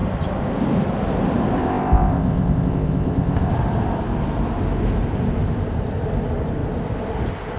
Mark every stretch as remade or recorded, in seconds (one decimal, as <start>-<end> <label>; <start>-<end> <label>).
0.0-1.6 recorded; 1.6-3.5 remade; 3.5-7.6 recorded